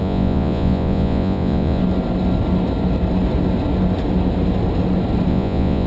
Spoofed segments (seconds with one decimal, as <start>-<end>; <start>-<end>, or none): 0.0-1.8; 5.3-5.9